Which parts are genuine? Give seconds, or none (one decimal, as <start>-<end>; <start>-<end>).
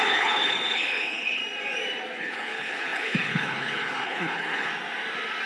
1.4-2.2; 4.7-5.5